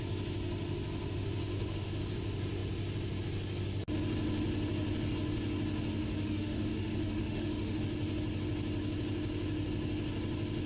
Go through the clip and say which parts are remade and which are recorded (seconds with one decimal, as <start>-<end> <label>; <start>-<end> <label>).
0.0-1.5 recorded; 1.5-2.0 remade; 2.0-6.0 recorded; 6.0-7.8 remade; 7.8-10.7 recorded